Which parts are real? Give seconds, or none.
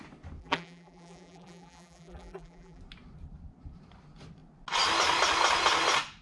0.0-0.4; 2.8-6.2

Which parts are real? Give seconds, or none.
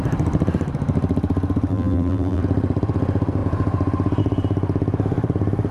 0.0-1.7; 2.4-5.7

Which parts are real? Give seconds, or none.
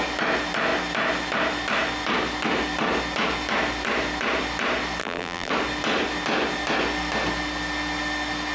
0.0-5.0; 5.5-8.5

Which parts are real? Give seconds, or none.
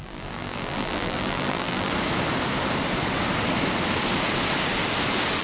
1.9-5.4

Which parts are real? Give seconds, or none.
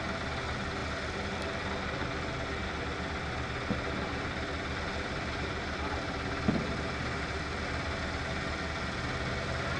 0.0-0.8; 1.4-4.1; 7.0-9.8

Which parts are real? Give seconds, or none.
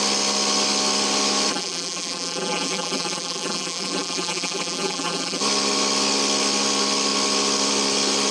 0.0-1.5; 5.4-8.3